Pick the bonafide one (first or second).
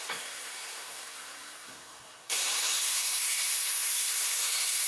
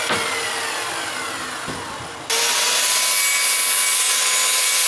second